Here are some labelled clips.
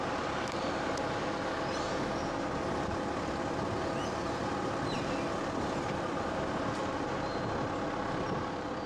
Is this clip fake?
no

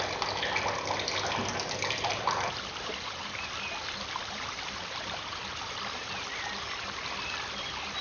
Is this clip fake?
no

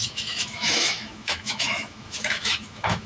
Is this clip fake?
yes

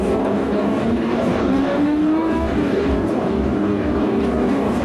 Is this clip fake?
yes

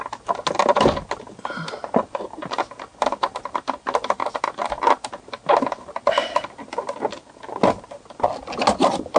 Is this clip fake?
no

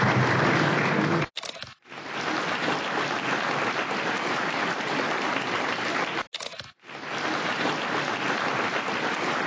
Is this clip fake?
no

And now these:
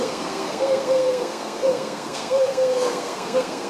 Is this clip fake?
yes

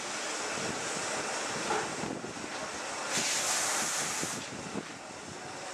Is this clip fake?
no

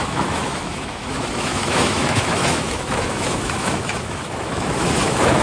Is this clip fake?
yes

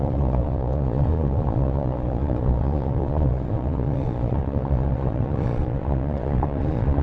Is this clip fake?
yes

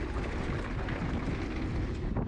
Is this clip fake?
no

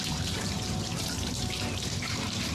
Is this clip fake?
yes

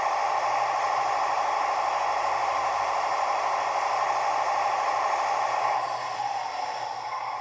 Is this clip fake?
no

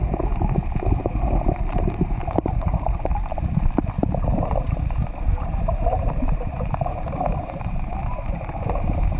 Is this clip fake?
yes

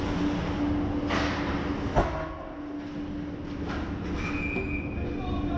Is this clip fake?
no